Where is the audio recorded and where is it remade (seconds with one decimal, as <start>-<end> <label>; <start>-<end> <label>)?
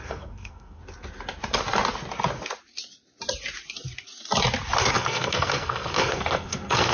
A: 0.0-0.8 remade; 0.8-4.9 recorded; 4.9-6.9 remade